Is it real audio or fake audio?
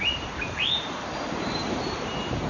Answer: fake